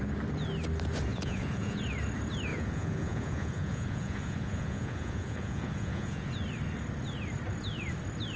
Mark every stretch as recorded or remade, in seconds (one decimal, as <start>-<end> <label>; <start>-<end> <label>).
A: 0.0-1.1 recorded; 1.1-1.8 remade; 1.8-2.5 recorded; 2.5-6.3 remade; 6.3-8.4 recorded